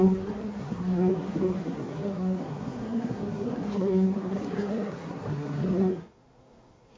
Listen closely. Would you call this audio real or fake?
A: fake